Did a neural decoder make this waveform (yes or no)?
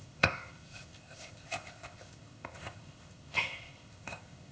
yes